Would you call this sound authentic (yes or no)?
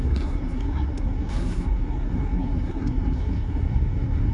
no